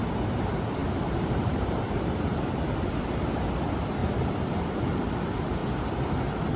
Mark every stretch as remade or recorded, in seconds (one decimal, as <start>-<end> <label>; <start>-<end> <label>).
0.0-2.3 remade; 2.3-2.9 recorded; 2.9-4.0 remade; 4.0-4.5 recorded; 4.5-5.6 remade; 5.6-6.6 recorded

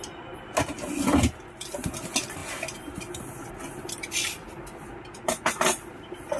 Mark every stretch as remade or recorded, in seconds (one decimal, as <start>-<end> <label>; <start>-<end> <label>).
0.0-6.4 recorded

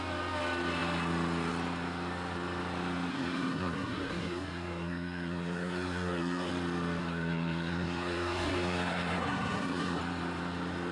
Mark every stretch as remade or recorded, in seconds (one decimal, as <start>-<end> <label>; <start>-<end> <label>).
0.0-3.1 recorded; 3.1-6.5 remade; 6.5-7.0 recorded; 7.0-10.0 remade; 10.0-10.9 recorded